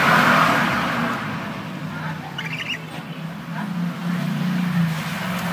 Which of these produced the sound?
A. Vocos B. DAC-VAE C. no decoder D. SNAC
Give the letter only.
C